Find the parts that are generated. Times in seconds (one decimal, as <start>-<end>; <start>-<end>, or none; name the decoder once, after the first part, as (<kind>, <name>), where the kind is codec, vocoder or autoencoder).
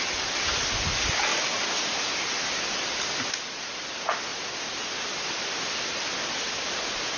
none